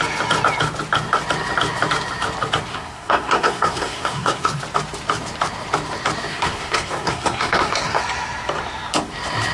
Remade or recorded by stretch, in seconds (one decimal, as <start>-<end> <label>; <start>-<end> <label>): 0.0-2.7 recorded; 2.7-4.6 remade; 4.6-6.3 recorded; 6.3-8.0 remade; 8.0-9.5 recorded